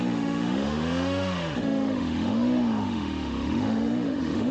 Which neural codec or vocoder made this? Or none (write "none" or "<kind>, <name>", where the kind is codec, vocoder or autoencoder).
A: autoencoder, DAC-VAE